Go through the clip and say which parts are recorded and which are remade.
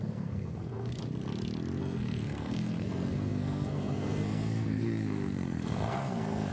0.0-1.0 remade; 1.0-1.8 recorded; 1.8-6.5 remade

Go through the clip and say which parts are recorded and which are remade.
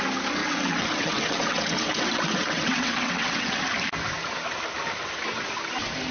0.0-0.4 recorded; 0.4-3.6 remade; 3.6-6.1 recorded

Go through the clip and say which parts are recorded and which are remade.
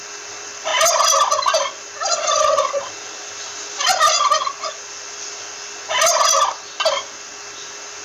0.0-8.0 recorded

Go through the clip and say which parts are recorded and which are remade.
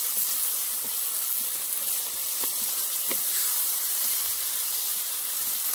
0.0-2.2 recorded; 2.2-5.7 remade